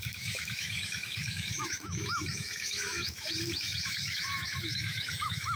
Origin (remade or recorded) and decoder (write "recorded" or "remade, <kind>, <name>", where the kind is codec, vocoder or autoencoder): remade, autoencoder, DAC-VAE